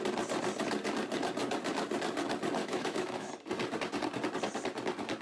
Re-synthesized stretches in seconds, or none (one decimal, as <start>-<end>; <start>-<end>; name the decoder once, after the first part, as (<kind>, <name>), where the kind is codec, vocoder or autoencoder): 2.6-3.3 (autoencoder, DAC-VAE)